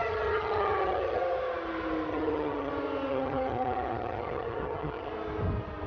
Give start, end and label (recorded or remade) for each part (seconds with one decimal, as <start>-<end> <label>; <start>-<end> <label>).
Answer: 0.0-1.2 remade; 1.2-2.1 recorded; 2.1-2.7 remade; 2.7-3.1 recorded; 3.1-5.1 remade; 5.1-5.9 recorded